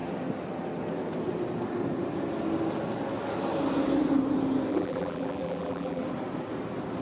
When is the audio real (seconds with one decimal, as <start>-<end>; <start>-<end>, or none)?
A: 0.0-4.7; 6.0-7.0